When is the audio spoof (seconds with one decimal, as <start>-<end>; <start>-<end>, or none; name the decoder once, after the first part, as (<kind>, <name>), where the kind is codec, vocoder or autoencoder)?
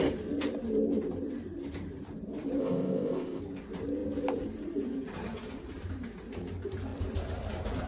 2.6-3.4 (codec, ZipCodec)